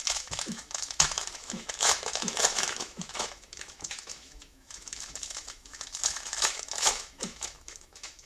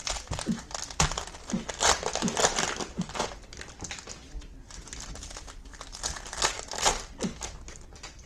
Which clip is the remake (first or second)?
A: first